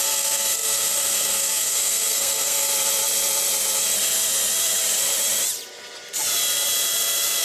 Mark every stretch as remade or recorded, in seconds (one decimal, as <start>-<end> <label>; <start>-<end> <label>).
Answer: 0.0-2.7 remade; 2.7-7.4 recorded